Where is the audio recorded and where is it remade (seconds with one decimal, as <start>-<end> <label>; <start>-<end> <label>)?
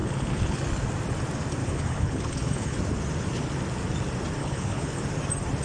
0.0-0.6 remade; 0.6-1.6 recorded; 1.6-2.8 remade; 2.8-4.4 recorded; 4.4-5.0 remade; 5.0-5.6 recorded